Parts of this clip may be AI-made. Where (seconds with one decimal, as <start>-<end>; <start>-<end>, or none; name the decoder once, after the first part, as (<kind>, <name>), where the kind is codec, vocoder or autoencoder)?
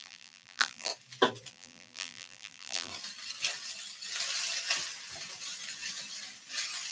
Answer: 0.0-0.9 (vocoder, BigVGAN v2); 1.5-2.9